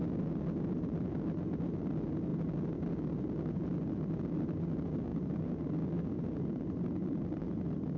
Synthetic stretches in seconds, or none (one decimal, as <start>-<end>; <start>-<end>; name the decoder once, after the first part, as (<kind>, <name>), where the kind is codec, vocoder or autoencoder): 2.3-2.9 (vocoder, BigVGAN v2); 5.1-7.4